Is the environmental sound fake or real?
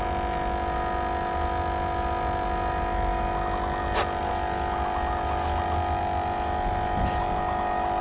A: real